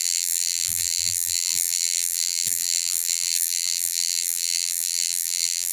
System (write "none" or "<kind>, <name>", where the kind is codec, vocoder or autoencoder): vocoder, BigVGAN v2